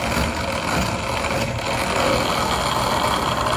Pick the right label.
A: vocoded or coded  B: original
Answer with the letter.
B